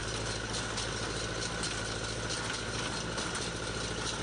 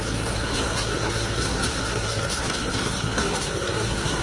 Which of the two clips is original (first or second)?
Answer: first